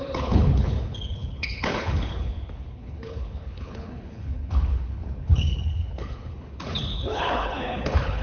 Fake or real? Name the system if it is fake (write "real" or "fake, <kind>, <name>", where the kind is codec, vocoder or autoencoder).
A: fake, codec, HILCodec